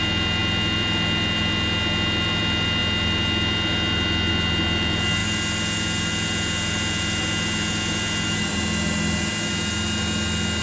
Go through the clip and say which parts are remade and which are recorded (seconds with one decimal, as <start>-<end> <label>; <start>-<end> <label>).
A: 0.0-10.6 recorded